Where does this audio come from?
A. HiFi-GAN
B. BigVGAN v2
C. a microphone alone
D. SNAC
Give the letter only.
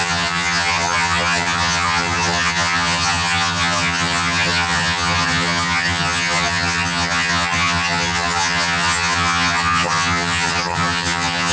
A